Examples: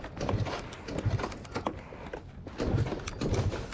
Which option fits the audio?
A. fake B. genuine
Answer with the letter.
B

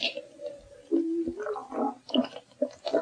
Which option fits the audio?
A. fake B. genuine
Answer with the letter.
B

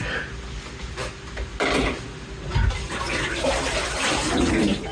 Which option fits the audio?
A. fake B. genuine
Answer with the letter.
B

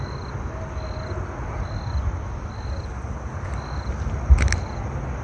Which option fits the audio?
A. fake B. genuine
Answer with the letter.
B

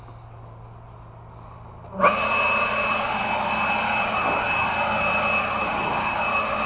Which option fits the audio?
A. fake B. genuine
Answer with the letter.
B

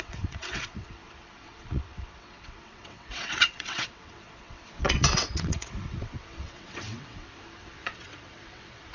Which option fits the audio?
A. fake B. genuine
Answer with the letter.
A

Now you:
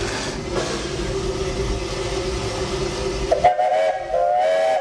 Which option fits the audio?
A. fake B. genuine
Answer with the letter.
B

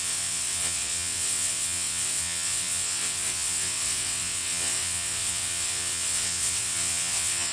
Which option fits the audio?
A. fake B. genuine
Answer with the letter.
A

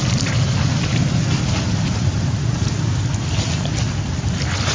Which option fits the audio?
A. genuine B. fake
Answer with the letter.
A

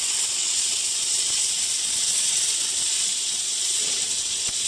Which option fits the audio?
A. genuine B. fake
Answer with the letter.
B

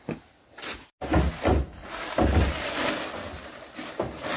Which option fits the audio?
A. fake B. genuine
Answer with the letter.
B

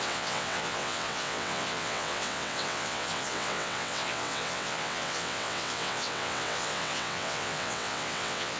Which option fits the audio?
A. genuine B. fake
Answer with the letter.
B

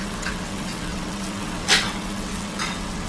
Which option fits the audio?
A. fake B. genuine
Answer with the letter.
A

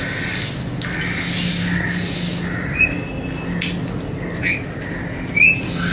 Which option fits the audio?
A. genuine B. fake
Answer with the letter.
A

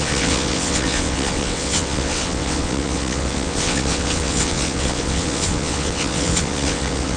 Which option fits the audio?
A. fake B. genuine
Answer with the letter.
A